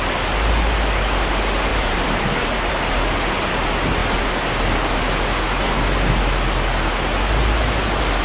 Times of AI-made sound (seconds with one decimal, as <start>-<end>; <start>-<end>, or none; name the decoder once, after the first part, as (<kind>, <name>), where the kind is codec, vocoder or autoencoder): 1.7-2.7 (vocoder, BigVGAN v2)